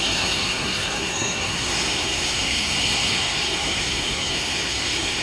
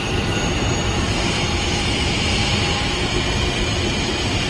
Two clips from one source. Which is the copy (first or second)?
first